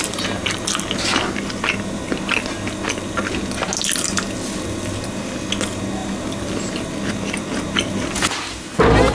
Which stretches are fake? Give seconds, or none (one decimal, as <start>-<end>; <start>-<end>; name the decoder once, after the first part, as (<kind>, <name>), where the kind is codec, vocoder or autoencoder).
none